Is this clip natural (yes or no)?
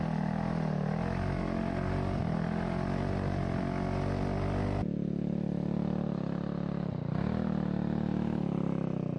yes